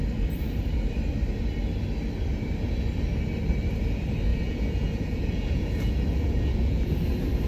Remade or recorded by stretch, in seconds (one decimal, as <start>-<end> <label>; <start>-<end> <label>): 0.0-4.3 recorded; 4.3-7.1 remade; 7.1-7.5 recorded